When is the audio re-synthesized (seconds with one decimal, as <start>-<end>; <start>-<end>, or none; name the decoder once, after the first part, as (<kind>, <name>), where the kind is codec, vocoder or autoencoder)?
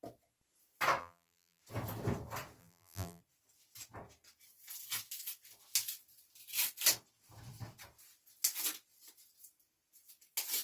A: 1.0-1.6 (vocoder, BigVGAN v2); 2.6-3.2